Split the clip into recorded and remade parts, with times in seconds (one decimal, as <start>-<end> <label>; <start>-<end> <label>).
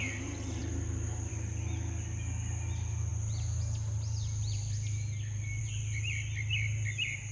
0.0-7.3 recorded